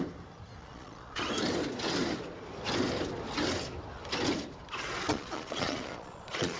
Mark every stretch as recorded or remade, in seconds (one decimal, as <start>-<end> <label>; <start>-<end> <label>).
0.0-0.6 recorded; 0.6-1.2 remade; 1.2-5.1 recorded; 5.1-6.6 remade